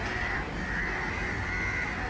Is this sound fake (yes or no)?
no